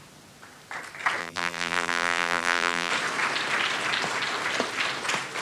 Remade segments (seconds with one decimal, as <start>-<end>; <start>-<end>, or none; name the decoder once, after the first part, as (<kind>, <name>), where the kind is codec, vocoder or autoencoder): 1.2-2.9 (vocoder, BigVGAN v2)